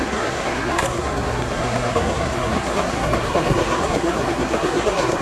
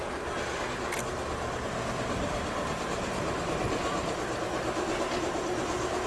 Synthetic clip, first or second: first